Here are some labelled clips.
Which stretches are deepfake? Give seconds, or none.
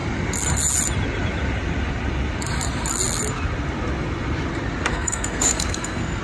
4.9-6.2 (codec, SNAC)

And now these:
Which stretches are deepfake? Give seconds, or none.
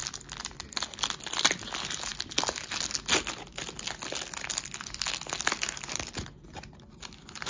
none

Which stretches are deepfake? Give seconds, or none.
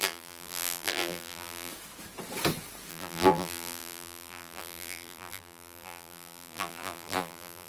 0.0-1.7 (vocoder, BigVGAN v2); 2.9-7.7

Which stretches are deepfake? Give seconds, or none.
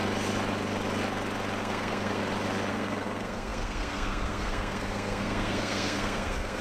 1.6-2.2 (codec, SNAC); 2.7-6.6